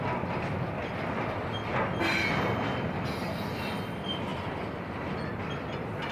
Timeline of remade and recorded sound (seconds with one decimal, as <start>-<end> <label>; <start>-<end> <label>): 0.0-6.1 recorded